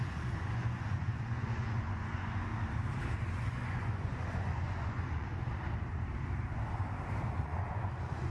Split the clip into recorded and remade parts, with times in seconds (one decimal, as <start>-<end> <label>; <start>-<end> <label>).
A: 0.0-2.5 remade; 2.5-3.4 recorded; 3.4-5.3 remade; 5.3-7.4 recorded; 7.4-8.3 remade

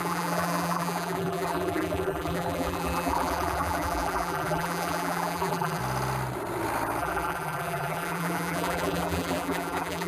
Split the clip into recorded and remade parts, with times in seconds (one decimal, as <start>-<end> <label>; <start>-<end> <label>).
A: 0.0-5.8 remade; 5.8-7.0 recorded; 7.0-10.1 remade